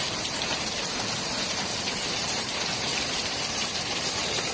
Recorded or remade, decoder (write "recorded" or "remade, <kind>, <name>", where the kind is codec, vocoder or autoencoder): remade, vocoder, BigVGAN v2